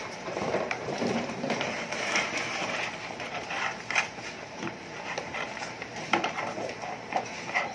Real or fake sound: fake